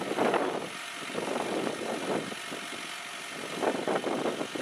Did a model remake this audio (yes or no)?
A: no